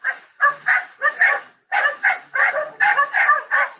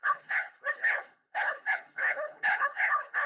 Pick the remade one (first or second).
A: second